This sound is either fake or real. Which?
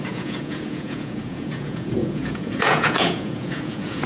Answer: fake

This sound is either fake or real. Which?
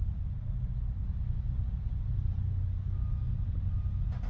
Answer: real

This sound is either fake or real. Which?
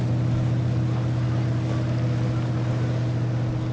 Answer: real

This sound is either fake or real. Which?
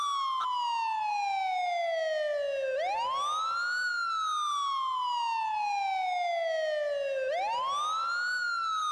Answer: real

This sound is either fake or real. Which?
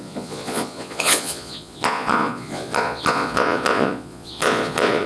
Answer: fake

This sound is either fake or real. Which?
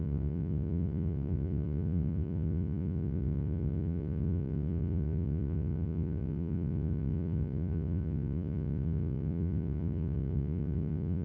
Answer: fake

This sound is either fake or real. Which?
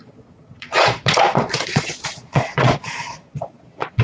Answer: fake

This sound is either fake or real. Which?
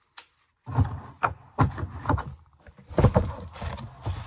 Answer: real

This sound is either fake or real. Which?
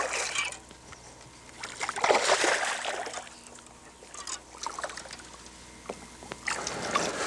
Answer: real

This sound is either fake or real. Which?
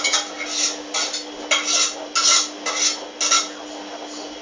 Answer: real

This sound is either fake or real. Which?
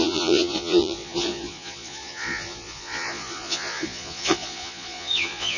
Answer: fake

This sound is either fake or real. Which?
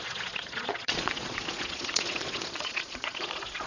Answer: fake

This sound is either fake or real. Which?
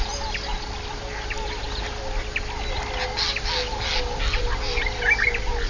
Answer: real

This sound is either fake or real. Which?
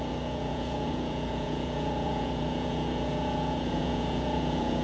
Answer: fake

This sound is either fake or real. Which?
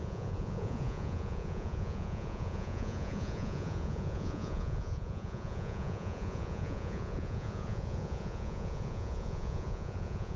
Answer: fake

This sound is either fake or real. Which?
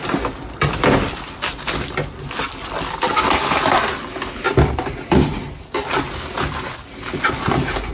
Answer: real